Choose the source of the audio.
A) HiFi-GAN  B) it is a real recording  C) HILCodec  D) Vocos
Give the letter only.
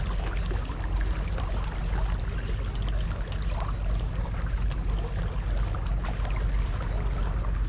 B